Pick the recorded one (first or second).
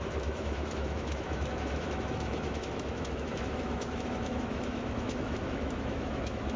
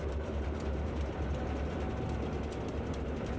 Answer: second